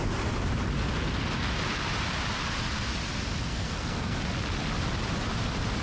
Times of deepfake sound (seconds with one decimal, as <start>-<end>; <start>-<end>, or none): 3.5-4.2